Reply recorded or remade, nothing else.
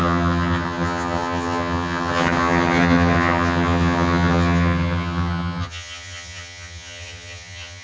remade